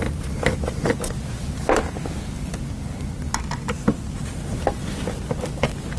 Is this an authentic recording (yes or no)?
yes